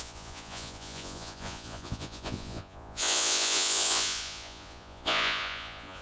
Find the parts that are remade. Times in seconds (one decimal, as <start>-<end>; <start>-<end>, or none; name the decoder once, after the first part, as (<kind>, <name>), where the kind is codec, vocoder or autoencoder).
0.0-6.0 (vocoder, Vocos)

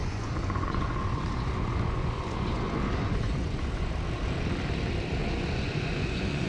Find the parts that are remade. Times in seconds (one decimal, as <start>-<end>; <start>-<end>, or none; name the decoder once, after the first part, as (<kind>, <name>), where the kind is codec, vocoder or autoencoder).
0.0-3.9 (vocoder, Vocos); 5.2-6.5

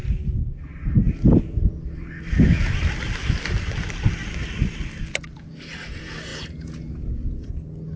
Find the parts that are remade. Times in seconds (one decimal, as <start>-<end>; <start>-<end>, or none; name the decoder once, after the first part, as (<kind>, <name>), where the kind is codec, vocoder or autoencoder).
6.3-7.5 (vocoder, Vocos)

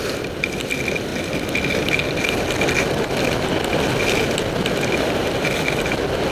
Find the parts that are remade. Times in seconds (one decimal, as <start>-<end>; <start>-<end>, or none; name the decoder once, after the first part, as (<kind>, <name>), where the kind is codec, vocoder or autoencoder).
none

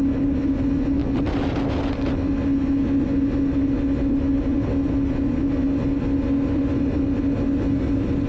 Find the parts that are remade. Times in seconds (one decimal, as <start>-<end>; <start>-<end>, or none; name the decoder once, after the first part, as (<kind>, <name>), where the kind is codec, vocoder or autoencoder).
none

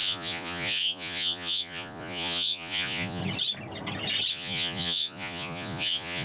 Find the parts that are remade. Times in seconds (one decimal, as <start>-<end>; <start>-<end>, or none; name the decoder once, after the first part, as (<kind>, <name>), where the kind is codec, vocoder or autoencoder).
0.0-3.2 (vocoder, Vocos); 4.3-6.2

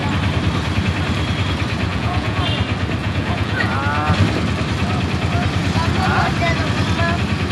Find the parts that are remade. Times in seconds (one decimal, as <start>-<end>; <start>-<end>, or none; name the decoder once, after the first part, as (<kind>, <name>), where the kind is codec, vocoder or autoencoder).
1.9-2.4 (vocoder, Vocos); 3.0-3.7